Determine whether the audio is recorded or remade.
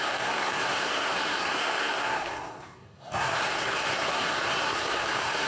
remade